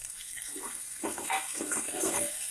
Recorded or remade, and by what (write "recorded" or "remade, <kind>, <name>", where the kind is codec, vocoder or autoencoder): remade, codec, SNAC